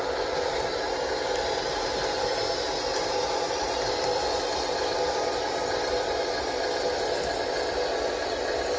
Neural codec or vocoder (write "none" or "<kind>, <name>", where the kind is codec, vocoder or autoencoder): none